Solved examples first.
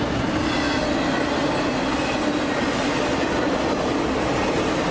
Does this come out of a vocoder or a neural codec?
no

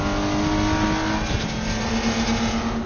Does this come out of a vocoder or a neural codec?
no